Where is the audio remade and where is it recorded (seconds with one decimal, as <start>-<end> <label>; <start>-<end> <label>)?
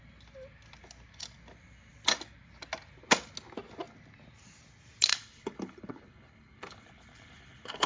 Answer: 0.0-5.1 recorded; 5.1-7.9 remade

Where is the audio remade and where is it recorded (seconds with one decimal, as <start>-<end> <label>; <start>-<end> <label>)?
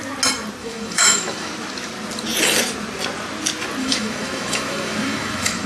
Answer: 0.0-0.6 recorded; 0.6-1.5 remade; 1.5-3.8 recorded; 3.8-5.7 remade